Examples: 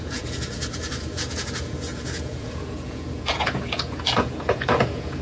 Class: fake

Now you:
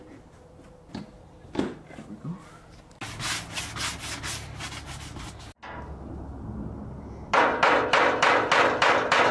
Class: real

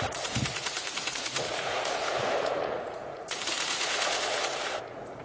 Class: fake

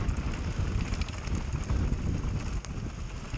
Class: real